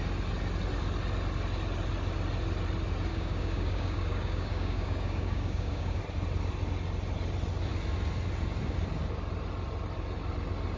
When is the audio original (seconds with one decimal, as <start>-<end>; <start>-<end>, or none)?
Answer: 0.0-3.1; 6.0-10.8